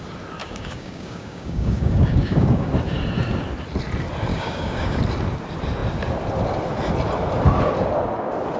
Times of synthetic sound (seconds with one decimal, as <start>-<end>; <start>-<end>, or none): 0.4-2.7; 4.3-5.0